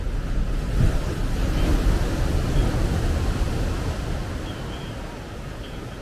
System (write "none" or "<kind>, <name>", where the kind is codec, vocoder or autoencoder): none